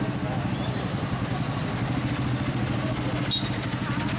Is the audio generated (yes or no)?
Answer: no